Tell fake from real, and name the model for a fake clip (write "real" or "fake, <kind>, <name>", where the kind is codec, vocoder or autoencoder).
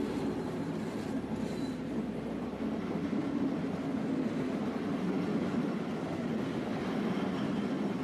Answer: real